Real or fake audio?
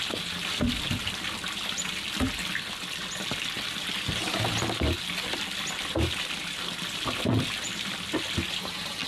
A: real